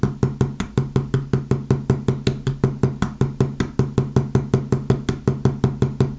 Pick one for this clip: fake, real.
real